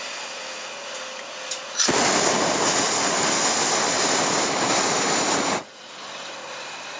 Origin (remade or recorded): recorded